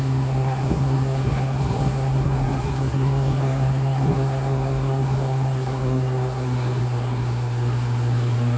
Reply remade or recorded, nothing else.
remade